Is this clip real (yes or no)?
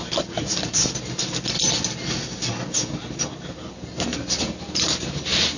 yes